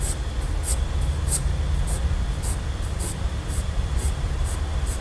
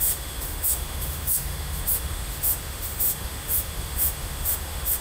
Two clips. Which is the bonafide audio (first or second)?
first